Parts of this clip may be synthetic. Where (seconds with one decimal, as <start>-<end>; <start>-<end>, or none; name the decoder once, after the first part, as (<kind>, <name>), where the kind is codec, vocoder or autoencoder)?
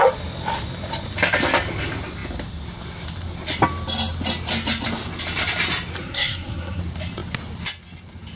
6.0-6.8 (codec, SNAC)